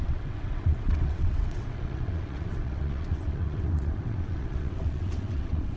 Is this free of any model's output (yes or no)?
no